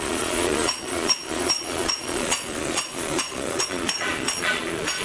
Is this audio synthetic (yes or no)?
yes